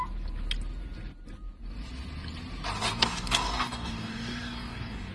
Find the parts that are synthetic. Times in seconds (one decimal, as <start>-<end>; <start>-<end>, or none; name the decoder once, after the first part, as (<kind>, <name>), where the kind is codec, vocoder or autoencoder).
2.9-5.1 (codec, DAC)